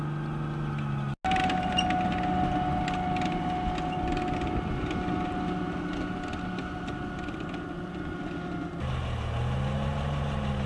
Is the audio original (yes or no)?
yes